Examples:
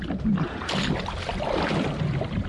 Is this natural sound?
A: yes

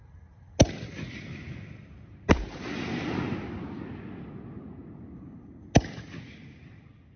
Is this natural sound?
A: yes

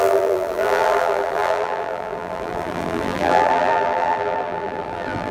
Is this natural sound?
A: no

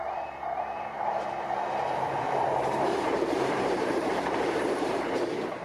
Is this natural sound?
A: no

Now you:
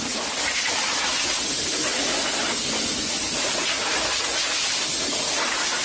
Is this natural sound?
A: yes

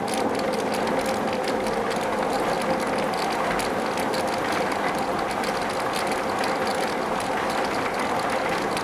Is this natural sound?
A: yes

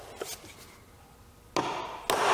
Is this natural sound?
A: yes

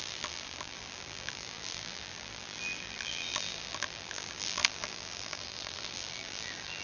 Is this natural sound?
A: no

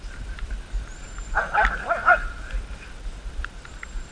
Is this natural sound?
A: no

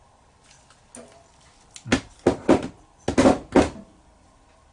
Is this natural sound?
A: yes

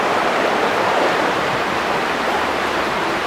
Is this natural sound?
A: no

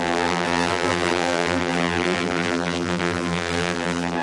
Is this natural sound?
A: no